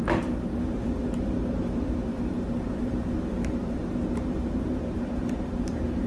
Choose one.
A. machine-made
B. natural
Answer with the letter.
A